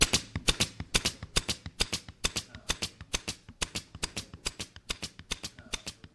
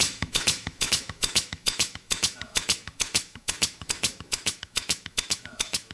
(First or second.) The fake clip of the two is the second